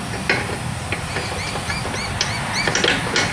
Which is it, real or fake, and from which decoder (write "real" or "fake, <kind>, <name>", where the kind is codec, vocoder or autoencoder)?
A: real